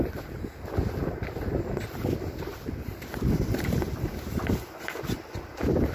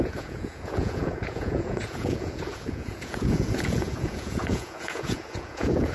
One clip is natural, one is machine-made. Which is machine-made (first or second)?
second